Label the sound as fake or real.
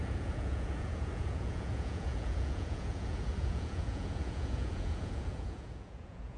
fake